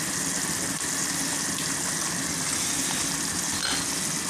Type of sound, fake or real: real